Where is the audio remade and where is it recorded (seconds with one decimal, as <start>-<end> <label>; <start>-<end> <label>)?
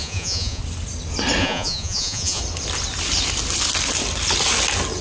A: 0.0-0.6 remade; 0.6-1.4 recorded; 1.4-2.4 remade; 2.4-5.0 recorded